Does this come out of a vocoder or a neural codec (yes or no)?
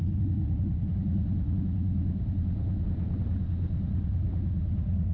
no